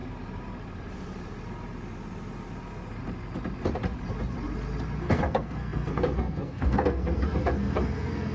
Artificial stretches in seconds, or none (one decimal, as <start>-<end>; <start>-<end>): 5.0-8.3